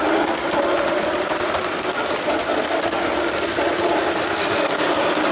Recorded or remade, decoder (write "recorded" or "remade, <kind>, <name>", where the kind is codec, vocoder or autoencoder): recorded